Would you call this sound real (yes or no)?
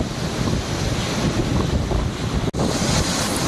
yes